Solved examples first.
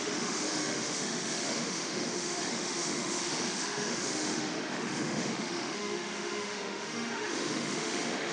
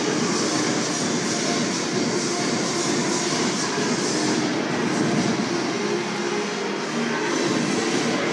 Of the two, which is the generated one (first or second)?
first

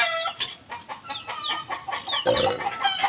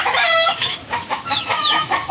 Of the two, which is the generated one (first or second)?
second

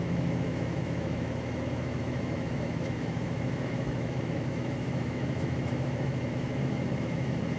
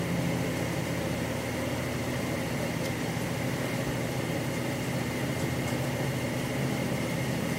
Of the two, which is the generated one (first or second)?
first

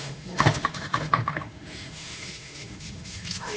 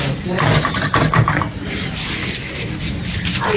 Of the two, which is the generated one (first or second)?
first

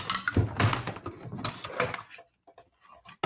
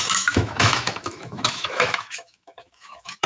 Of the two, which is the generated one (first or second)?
second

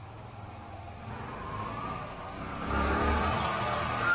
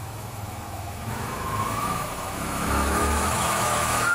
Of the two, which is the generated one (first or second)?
second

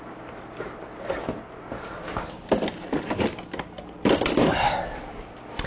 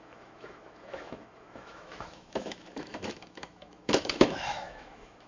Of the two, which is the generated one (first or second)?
second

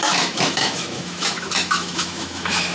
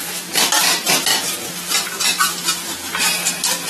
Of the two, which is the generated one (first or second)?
first